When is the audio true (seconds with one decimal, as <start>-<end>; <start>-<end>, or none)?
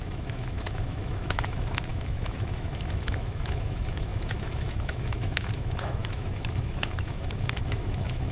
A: none